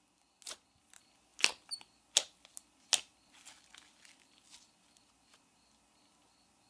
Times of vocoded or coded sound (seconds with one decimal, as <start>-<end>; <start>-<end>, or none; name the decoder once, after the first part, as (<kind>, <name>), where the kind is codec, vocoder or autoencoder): none

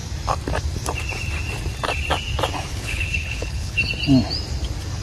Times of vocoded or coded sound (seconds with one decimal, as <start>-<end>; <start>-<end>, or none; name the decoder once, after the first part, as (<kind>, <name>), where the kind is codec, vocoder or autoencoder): 2.7-3.9 (codec, HILCodec)

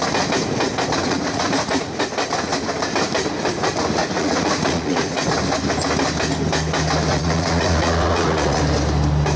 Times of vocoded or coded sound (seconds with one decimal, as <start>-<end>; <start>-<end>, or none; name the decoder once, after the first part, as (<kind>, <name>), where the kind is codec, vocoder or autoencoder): 1.0-2.0 (vocoder, Vocos); 4.0-5.2; 7.1-8.6

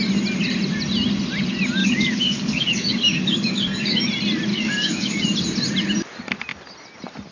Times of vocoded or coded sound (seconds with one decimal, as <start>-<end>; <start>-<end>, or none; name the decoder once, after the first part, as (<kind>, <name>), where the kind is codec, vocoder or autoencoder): 1.8-4.0 (codec, DAC); 4.5-5.2

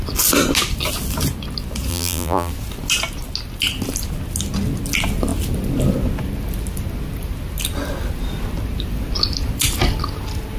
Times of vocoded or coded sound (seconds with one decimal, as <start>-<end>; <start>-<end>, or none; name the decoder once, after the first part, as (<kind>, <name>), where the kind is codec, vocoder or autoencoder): 1.9-2.5 (vocoder, BigVGAN v2)

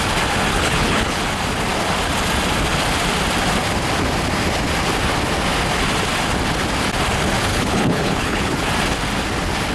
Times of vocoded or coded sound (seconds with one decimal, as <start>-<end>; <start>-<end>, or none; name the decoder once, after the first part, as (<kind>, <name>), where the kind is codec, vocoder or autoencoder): 0.5-1.2 (codec, HILCodec); 7.5-8.7

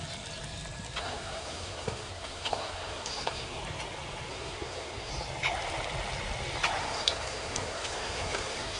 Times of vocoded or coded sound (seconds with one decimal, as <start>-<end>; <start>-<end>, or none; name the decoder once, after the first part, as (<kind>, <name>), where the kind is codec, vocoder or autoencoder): 1.0-3.6 (codec, SNAC); 4.3-5.1; 6.8-8.8